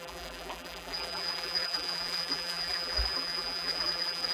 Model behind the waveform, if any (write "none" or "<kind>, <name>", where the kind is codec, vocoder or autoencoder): vocoder, BigVGAN v2